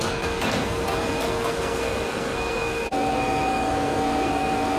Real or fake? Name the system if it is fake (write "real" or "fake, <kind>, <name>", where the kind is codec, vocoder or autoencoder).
fake, codec, SNAC